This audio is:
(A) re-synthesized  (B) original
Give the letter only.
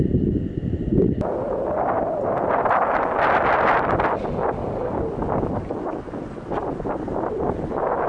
B